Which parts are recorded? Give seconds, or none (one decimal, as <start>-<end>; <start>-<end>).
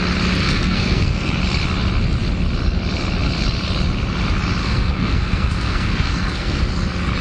0.0-0.4; 1.4-4.6; 6.6-7.2